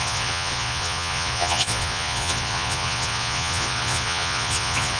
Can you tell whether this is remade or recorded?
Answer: remade